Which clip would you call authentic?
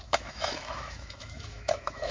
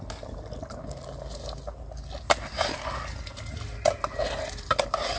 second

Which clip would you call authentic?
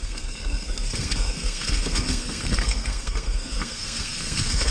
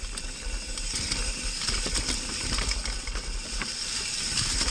second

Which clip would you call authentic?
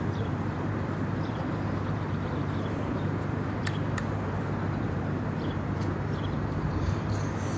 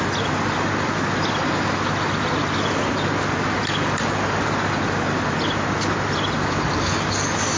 second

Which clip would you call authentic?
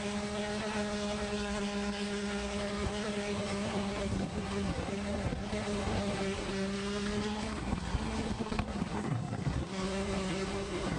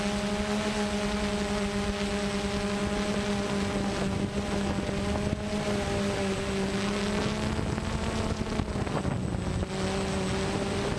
second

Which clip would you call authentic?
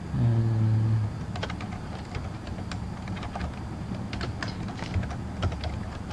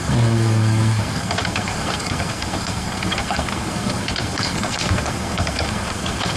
first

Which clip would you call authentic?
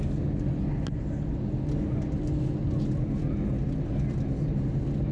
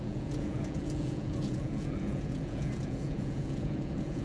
first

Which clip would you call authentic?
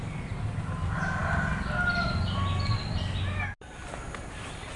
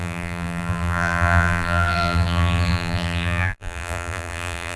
first